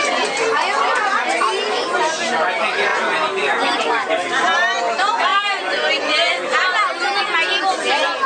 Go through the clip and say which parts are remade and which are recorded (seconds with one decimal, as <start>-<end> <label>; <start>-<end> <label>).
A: 0.0-8.3 recorded